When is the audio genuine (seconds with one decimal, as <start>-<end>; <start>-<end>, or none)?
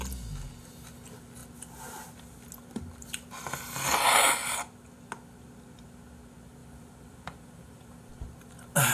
0.0-6.6; 8.1-8.9